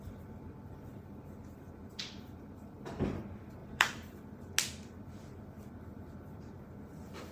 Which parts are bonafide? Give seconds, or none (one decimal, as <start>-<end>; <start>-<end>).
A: 0.0-3.6; 4.5-7.3